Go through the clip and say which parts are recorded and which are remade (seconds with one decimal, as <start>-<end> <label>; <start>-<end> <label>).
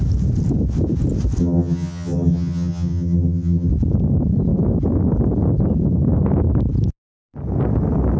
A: 0.0-1.4 recorded; 1.4-3.7 remade; 3.7-8.2 recorded